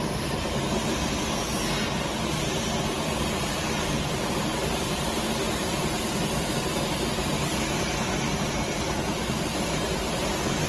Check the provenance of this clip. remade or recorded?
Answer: recorded